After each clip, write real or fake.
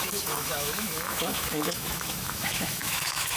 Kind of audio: fake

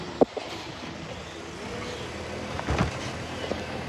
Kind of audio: real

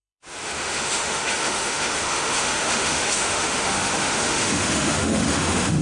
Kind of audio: fake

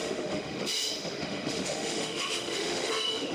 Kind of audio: fake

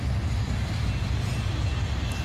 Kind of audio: real